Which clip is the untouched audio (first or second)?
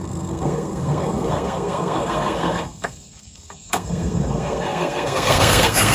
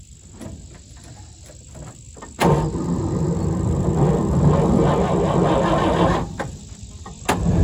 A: second